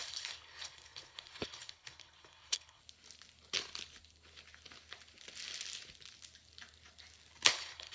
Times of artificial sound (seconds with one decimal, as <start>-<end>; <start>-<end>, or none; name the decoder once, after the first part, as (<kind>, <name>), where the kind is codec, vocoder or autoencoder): 0.0-2.8 (codec, HILCodec); 7.5-7.9